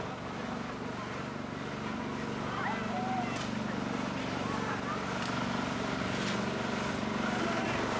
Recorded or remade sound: recorded